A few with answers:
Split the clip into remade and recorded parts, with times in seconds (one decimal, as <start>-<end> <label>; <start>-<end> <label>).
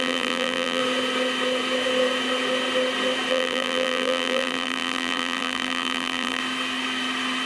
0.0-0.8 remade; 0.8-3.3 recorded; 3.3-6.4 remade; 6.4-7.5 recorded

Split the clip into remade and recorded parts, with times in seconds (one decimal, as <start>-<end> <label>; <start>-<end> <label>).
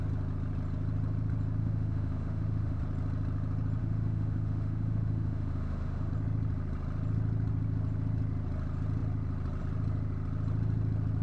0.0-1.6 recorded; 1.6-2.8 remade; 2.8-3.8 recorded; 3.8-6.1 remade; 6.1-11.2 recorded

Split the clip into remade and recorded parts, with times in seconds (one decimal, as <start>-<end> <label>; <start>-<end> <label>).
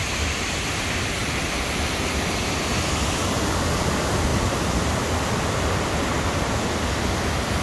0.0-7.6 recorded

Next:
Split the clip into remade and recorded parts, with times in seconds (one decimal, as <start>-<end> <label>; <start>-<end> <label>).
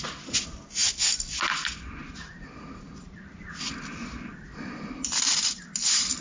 0.0-4.3 recorded; 4.3-5.5 remade; 5.5-6.2 recorded